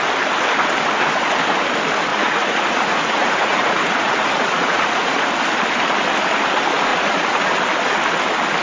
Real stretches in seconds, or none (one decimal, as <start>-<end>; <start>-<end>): 0.0-2.1; 5.3-6.9; 7.5-8.6